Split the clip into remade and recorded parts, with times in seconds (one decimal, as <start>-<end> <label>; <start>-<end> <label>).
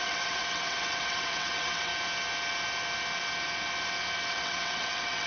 0.0-1.9 remade; 1.9-4.3 recorded; 4.3-5.3 remade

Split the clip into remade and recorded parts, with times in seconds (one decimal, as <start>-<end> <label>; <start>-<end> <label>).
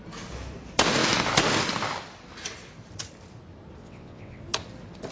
0.0-3.8 recorded; 3.8-4.4 remade; 4.4-5.1 recorded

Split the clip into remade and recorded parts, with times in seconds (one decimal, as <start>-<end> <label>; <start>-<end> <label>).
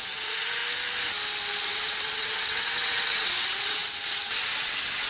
0.0-0.6 remade; 0.6-1.6 recorded; 1.6-5.1 remade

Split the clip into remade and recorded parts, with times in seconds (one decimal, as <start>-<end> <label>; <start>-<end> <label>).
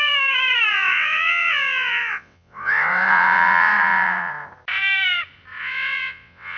0.0-0.7 recorded; 0.7-4.3 remade; 4.3-5.6 recorded; 5.6-6.6 remade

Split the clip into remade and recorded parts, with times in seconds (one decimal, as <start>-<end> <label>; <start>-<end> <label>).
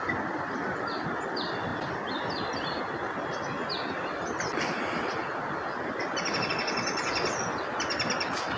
0.0-8.6 recorded